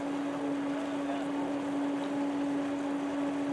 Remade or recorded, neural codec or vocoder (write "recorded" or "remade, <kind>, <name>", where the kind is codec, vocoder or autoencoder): recorded